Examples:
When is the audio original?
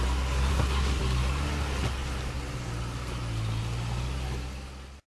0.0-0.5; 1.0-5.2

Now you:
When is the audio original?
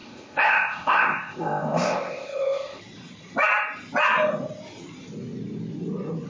2.8-6.3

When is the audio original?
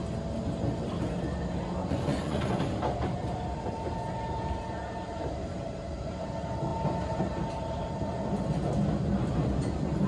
0.0-1.8; 2.6-10.1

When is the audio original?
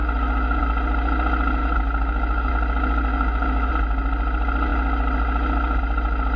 0.6-1.6; 2.5-3.1; 3.7-6.4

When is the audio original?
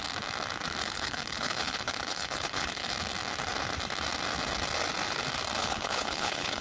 0.0-0.8; 2.9-5.6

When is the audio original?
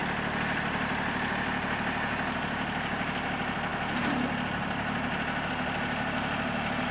0.0-6.9